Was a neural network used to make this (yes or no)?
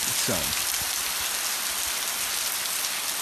no